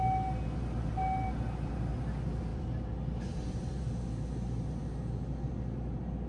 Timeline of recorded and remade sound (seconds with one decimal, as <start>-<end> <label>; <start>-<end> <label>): 0.0-6.3 recorded